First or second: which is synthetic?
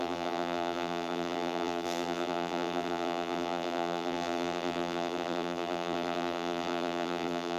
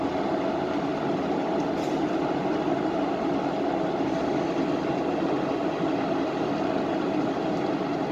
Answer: first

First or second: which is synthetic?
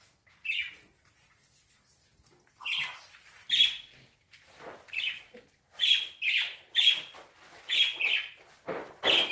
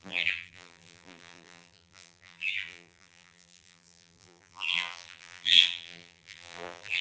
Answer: second